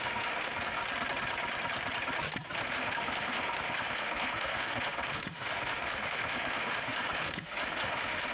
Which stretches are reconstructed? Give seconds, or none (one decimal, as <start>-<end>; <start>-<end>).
0.0-0.8; 2.7-8.3